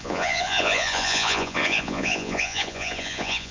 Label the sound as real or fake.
fake